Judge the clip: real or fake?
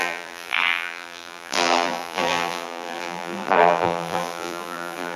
fake